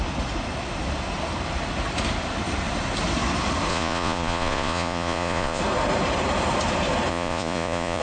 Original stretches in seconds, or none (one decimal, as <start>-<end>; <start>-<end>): 0.0-3.7; 5.6-7.1